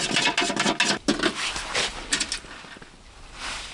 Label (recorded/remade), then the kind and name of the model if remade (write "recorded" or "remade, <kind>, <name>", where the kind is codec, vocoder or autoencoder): recorded